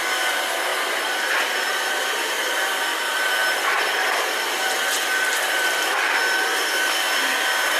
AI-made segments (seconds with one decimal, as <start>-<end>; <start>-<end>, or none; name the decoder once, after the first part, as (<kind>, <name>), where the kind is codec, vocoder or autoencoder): 0.7-5.4 (vocoder, BigVGAN v2)